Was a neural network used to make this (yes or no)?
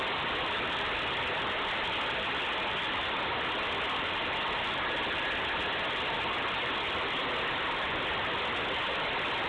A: no